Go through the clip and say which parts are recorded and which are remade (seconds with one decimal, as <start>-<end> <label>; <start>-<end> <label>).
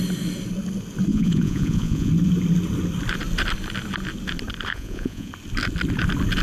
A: 0.0-1.1 recorded; 1.1-2.1 remade; 2.1-4.7 recorded; 4.7-5.3 remade; 5.3-6.4 recorded